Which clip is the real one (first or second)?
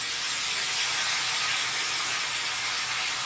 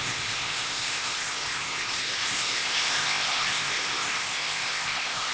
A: first